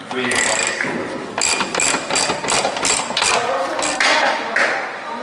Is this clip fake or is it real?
real